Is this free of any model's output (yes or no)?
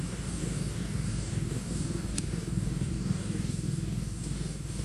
no